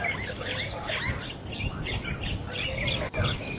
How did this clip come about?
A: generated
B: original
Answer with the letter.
B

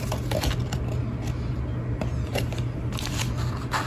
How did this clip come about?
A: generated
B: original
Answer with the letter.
B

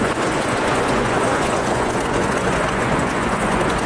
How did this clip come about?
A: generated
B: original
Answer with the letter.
A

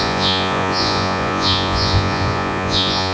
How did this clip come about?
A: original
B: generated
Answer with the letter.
B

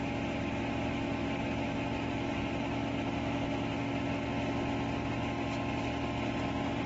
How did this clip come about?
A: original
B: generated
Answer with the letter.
A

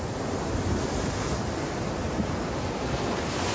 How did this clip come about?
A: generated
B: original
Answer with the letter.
B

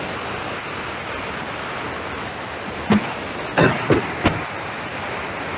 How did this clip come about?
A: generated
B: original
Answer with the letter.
B